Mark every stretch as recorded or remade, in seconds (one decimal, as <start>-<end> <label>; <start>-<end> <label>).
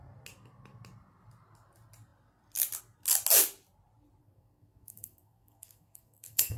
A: 0.0-4.2 recorded; 4.2-6.6 remade